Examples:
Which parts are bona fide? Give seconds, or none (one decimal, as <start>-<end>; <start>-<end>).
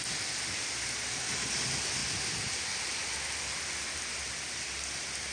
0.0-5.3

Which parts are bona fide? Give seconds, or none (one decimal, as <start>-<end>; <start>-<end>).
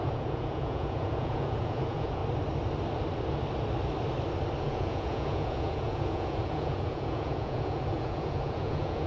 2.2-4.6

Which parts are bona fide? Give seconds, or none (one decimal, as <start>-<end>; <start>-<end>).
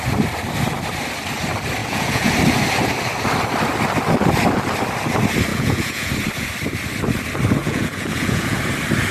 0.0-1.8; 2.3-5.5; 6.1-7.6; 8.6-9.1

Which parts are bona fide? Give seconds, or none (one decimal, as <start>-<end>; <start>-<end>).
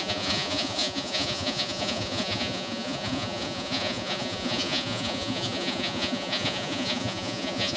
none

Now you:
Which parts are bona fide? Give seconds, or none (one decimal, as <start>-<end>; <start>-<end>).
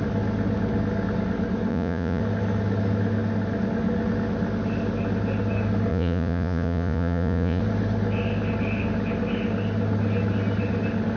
0.0-1.7; 2.2-5.9; 7.6-11.2